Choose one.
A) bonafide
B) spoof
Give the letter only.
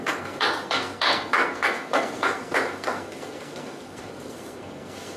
B